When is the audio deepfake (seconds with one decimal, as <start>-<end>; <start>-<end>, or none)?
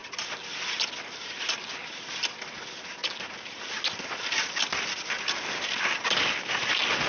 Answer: none